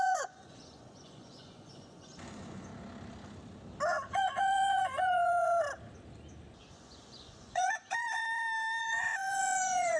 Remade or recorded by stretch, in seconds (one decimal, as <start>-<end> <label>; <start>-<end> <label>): 0.0-2.7 remade; 2.7-4.1 recorded; 4.1-5.5 remade; 5.5-6.7 recorded; 6.7-8.2 remade; 8.2-8.8 recorded; 8.8-10.0 remade